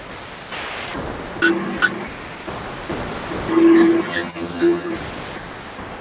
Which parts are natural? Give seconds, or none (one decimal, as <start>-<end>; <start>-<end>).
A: 0.0-4.1; 4.9-6.0